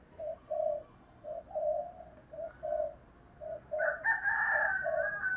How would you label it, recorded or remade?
recorded